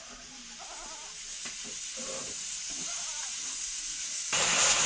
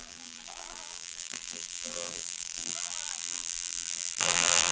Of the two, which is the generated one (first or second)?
second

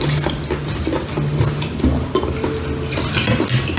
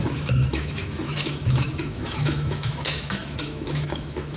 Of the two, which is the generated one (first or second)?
second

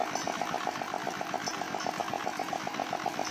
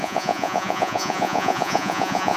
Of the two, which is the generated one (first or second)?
second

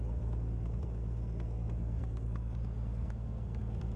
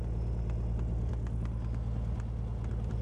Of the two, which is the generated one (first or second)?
first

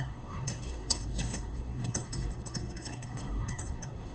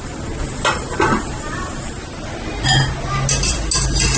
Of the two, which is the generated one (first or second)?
first